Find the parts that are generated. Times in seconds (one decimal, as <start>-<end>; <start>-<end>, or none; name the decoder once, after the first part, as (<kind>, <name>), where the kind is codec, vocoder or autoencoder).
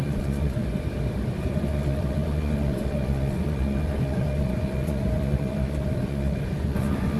0.0-0.6 (vocoder, Vocos); 1.4-7.2